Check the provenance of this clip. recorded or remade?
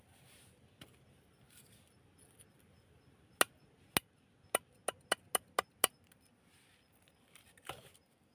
recorded